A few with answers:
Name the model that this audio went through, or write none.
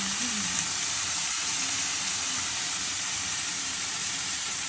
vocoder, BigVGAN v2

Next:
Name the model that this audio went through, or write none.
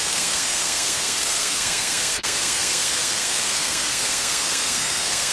codec, SNAC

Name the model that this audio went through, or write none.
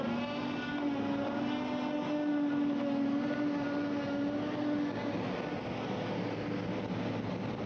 none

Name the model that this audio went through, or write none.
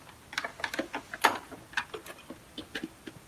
none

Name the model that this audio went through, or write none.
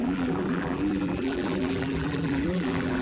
vocoder, BigVGAN v2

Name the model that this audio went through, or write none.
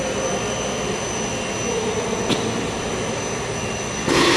none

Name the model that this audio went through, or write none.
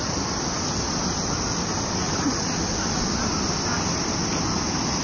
none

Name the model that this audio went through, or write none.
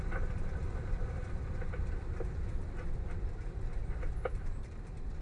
vocoder, BigVGAN v2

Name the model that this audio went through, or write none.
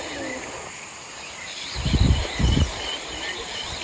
none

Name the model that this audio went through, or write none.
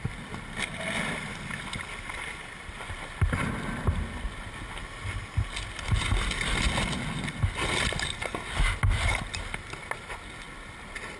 none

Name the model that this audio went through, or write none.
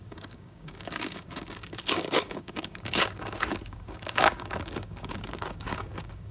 codec, DAC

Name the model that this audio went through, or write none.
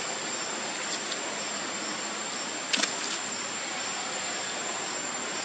none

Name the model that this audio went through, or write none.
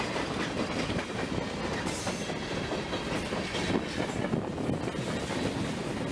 none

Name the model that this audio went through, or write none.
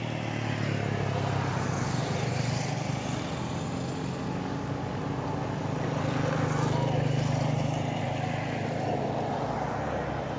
none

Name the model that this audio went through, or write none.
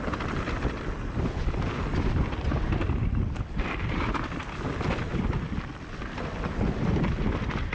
none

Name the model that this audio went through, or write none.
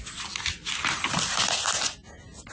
none